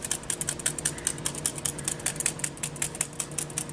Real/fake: real